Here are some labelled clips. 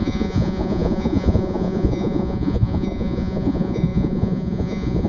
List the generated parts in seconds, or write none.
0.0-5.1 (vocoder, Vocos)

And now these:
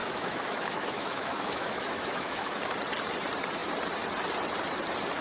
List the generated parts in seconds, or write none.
0.0-2.7 (autoencoder, DAC-VAE)

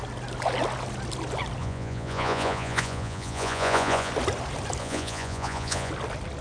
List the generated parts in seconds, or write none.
1.6-4.1 (vocoder, Vocos); 4.8-5.9

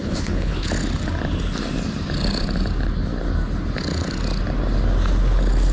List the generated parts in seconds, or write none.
0.0-0.7 (codec, HILCodec)

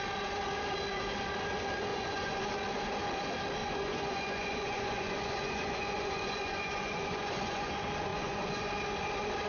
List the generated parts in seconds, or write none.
1.9-2.4 (vocoder, Vocos); 3.6-7.7; 8.1-8.7

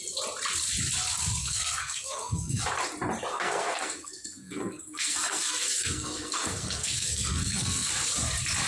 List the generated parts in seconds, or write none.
1.4-2.6 (codec, SNAC); 3.3-7.9